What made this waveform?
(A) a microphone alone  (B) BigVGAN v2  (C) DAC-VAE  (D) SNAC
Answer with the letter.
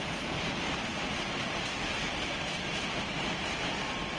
A